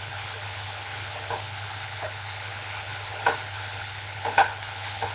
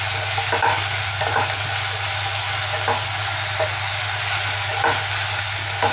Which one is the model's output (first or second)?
first